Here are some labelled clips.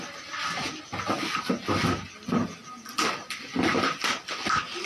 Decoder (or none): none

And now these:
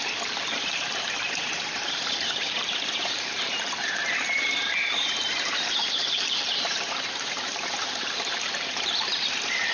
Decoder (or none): vocoder, BigVGAN v2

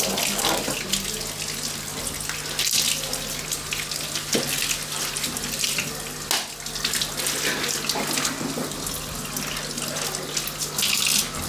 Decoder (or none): none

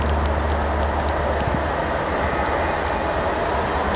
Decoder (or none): none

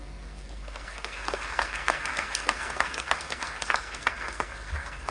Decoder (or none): codec, SNAC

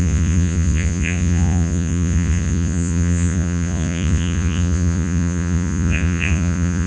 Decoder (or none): vocoder, Vocos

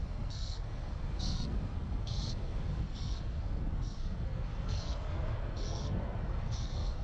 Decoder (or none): codec, SNAC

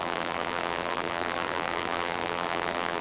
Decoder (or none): vocoder, BigVGAN v2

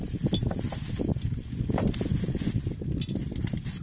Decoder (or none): none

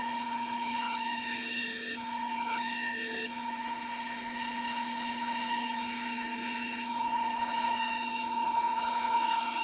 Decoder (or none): codec, HILCodec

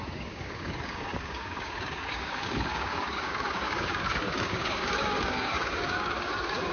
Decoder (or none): codec, DAC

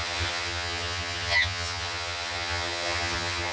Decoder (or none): vocoder, HiFi-GAN